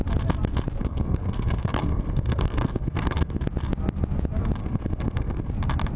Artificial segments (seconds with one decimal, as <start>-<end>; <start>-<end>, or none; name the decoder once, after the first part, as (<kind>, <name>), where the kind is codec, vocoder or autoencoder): 0.8-3.4 (codec, SNAC); 4.6-5.5